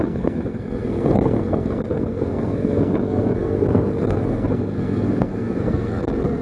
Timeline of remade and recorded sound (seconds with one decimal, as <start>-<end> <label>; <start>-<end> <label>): 0.0-6.4 remade